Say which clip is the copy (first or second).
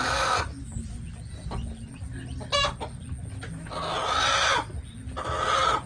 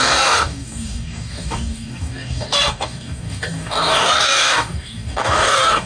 second